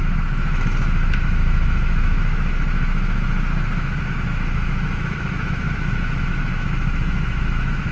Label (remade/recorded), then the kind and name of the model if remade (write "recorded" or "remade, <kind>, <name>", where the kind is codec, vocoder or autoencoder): remade, autoencoder, DAC-VAE